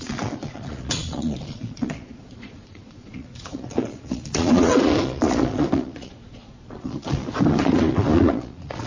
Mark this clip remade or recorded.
remade